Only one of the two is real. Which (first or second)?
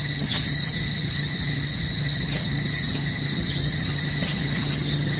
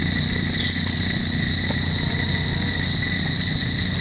second